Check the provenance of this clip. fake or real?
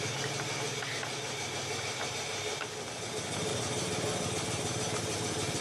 real